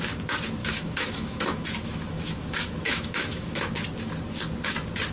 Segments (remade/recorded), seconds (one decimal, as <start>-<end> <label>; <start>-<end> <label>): 0.0-0.6 recorded; 0.6-3.7 remade; 3.7-5.1 recorded